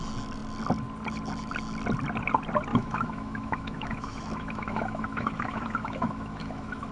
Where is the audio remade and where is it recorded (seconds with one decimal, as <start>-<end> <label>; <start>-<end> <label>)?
0.0-2.7 recorded; 2.7-6.9 remade